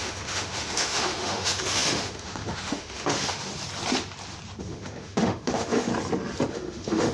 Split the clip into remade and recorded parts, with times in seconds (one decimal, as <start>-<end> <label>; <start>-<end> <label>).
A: 0.0-3.5 remade; 3.5-4.6 recorded; 4.6-5.9 remade; 5.9-6.5 recorded; 6.5-7.1 remade